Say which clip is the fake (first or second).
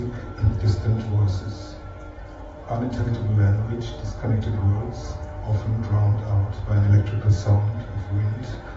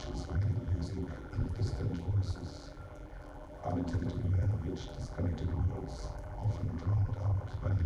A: second